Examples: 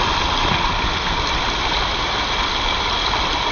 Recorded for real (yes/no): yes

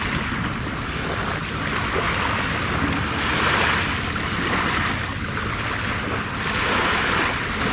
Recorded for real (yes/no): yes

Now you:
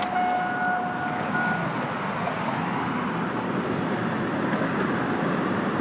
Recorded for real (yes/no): yes